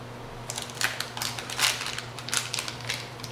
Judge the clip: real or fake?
real